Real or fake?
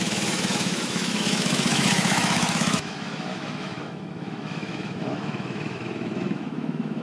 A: fake